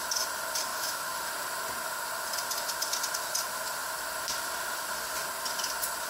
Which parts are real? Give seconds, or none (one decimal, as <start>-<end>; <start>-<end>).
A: 0.0-0.7; 1.3-6.1